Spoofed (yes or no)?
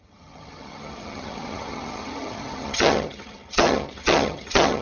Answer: yes